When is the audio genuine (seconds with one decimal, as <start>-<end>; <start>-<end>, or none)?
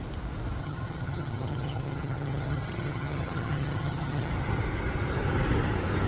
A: 0.0-0.6; 4.3-6.1